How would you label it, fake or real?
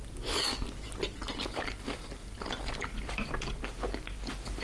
real